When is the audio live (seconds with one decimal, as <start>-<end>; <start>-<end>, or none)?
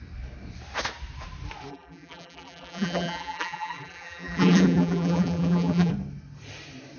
0.0-1.7; 5.9-7.0